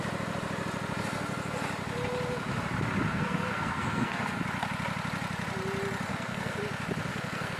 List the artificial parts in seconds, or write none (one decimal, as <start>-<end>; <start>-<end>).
3.1-4.4; 6.1-6.6; 7.1-7.6